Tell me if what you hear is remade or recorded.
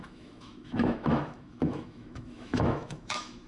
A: remade